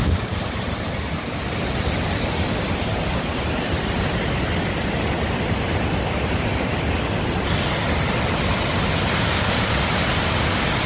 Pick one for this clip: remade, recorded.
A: recorded